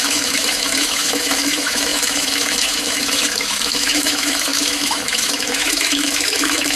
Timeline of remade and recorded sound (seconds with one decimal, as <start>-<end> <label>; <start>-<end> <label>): 0.0-6.8 remade

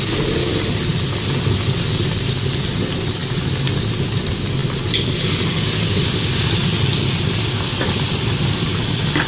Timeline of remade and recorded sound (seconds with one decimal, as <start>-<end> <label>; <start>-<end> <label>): 0.0-9.3 recorded

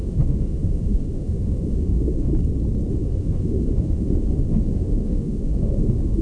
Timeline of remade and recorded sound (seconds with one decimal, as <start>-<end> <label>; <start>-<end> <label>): 0.0-2.3 remade; 2.3-2.9 recorded; 2.9-6.2 remade

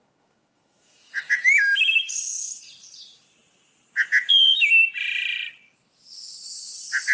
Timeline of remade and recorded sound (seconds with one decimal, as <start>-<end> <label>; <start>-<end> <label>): 0.0-2.6 remade; 2.6-7.1 recorded

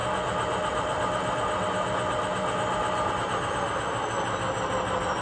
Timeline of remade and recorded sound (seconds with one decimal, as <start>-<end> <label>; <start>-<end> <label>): 0.0-5.2 recorded

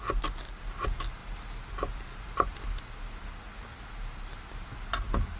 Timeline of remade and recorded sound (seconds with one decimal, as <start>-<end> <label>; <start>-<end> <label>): 0.0-5.4 recorded